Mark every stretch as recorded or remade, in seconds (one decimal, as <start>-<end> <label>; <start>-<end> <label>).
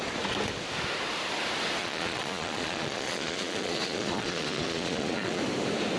0.0-1.8 recorded; 1.8-5.4 remade; 5.4-6.0 recorded